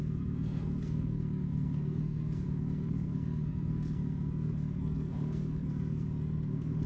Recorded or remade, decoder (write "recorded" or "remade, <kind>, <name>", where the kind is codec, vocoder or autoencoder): remade, codec, SNAC